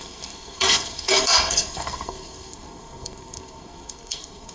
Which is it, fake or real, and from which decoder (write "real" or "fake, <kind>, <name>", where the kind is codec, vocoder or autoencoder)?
fake, codec, SNAC